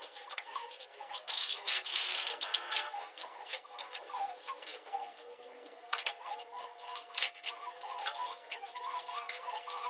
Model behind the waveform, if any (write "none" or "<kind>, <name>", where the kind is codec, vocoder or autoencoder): codec, SNAC